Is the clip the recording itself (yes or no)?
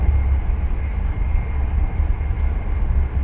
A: yes